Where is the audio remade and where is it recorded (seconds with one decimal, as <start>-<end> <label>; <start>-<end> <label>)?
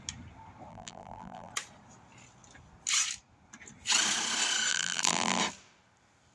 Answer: 0.0-0.7 recorded; 0.7-1.5 remade; 1.5-4.7 recorded; 4.7-5.4 remade; 5.4-6.3 recorded